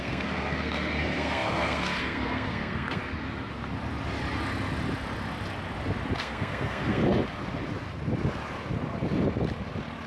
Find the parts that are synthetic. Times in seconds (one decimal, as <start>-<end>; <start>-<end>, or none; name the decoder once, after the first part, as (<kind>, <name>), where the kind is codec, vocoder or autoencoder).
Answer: 0.0-3.0 (codec, SNAC); 6.2-7.0

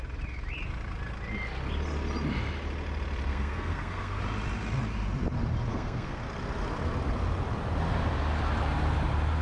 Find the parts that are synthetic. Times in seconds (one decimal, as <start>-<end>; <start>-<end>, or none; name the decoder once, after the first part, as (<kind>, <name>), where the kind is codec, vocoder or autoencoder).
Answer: 3.3-4.2 (codec, SNAC); 5.7-6.2

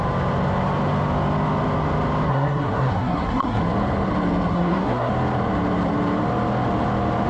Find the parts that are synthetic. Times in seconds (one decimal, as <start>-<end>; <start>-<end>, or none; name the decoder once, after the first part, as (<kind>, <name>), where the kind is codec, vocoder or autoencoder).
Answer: 2.3-3.6 (codec, SNAC); 4.5-5.1

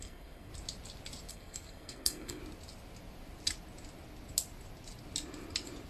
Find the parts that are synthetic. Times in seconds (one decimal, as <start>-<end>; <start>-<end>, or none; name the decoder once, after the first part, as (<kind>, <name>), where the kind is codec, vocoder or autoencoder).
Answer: 0.0-0.5 (codec, SNAC); 1.3-2.4